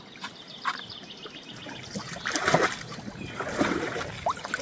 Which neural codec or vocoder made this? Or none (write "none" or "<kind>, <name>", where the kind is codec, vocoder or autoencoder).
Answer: none